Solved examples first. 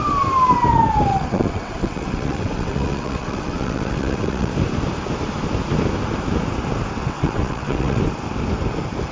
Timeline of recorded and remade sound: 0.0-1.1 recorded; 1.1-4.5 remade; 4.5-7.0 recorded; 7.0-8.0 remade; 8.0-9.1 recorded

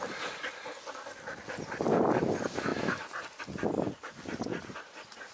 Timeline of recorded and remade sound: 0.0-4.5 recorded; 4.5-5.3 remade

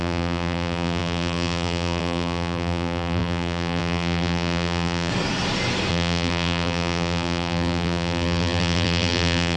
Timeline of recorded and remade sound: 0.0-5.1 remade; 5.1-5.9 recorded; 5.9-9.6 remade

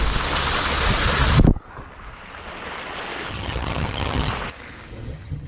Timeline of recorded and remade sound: 0.0-3.3 recorded; 3.3-4.3 remade; 4.3-4.9 recorded; 4.9-5.5 remade

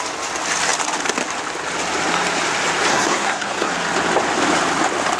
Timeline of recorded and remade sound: 0.0-2.9 recorded; 2.9-3.7 remade; 3.7-5.2 recorded

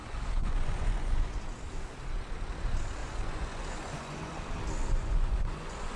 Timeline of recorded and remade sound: 0.0-1.4 remade; 1.4-3.0 recorded; 3.0-4.4 remade; 4.4-4.9 recorded; 4.9-6.0 remade

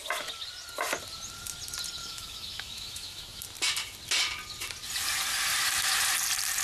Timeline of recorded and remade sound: 0.0-2.0 recorded; 2.0-3.4 remade; 3.4-6.6 recorded